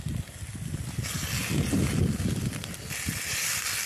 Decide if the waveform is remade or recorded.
recorded